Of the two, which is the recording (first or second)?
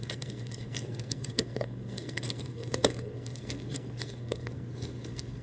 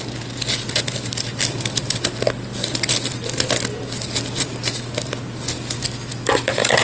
second